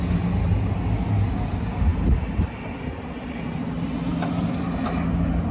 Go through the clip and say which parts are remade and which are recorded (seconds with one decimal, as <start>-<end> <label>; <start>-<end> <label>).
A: 0.0-5.5 recorded